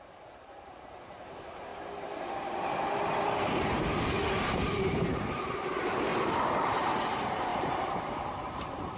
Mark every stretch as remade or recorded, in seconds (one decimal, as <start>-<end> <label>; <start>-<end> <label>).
0.0-1.7 remade; 1.7-3.6 recorded; 3.6-6.1 remade; 6.1-7.1 recorded; 7.1-9.0 remade